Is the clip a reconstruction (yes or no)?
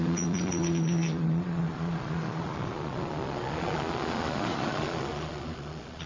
yes